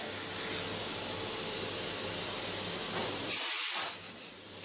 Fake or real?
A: real